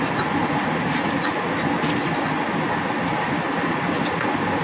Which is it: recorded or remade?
recorded